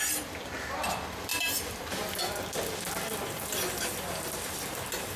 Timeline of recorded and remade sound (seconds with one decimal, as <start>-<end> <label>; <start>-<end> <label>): 0.0-1.3 recorded; 1.3-2.2 remade; 2.2-5.2 recorded